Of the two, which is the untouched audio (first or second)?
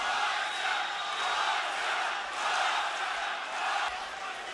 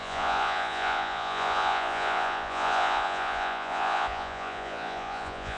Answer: first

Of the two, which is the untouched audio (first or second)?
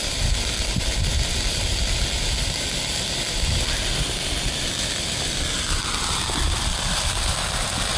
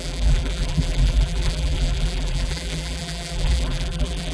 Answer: first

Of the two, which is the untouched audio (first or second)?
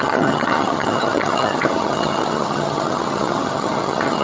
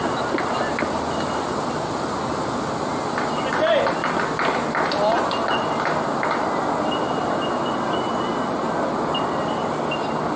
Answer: second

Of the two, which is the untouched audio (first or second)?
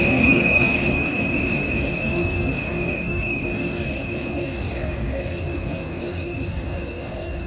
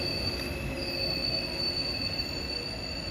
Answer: second